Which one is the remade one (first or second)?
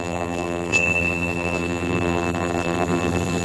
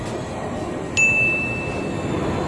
first